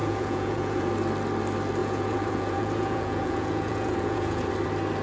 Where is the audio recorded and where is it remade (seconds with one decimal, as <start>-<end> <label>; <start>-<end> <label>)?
0.0-0.9 remade; 0.9-1.8 recorded; 1.8-4.5 remade; 4.5-5.0 recorded